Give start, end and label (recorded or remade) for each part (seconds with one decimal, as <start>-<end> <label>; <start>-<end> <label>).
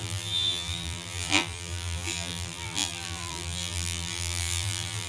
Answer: 0.0-5.1 remade